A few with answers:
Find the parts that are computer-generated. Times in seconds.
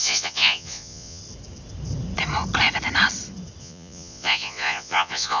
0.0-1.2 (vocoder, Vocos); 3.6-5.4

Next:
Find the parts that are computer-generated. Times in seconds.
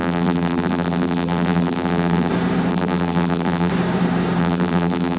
0.0-2.3 (vocoder, BigVGAN v2); 2.7-3.7; 4.4-5.2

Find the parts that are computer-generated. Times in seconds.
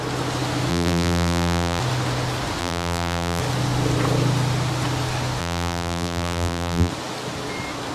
0.7-1.8 (vocoder, BigVGAN v2); 2.6-3.4; 5.4-6.9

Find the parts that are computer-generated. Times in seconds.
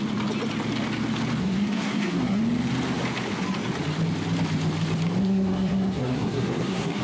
1.4-2.4 (codec, SNAC); 5.2-7.0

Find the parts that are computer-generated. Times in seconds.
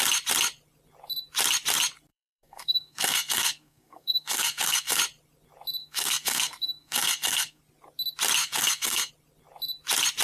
2.1-5.0 (codec, SNAC); 5.8-7.6; 8.4-9.1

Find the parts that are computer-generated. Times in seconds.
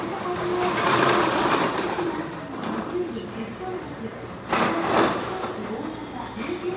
0.5-4.6 (vocoder, BigVGAN v2)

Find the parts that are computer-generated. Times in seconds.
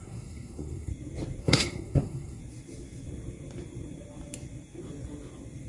0.0-0.9 (codec, SNAC); 1.4-2.4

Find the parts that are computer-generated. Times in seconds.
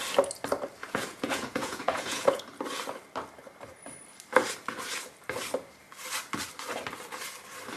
0.8-2.4 (vocoder, Vocos)